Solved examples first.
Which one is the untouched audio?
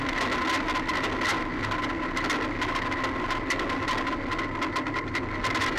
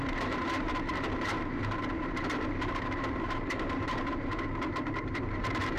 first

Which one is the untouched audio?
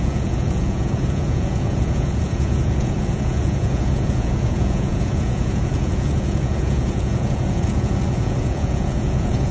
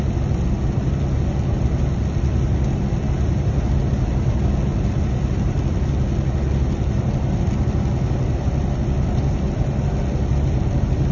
second